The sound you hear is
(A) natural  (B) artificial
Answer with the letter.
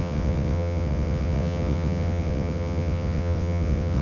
B